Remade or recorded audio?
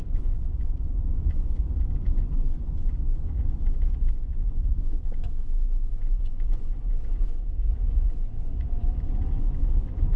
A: remade